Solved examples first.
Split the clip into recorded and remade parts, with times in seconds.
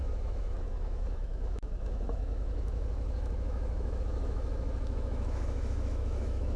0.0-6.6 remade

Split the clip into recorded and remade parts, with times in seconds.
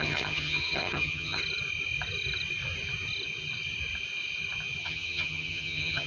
0.0-1.4 remade; 1.4-4.8 recorded; 4.8-6.1 remade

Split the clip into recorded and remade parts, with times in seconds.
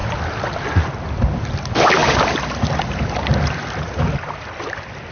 0.0-2.0 recorded; 2.0-5.1 remade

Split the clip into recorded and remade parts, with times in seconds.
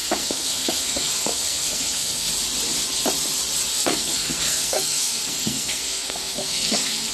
0.0-2.3 remade; 2.3-3.7 recorded; 3.7-7.1 remade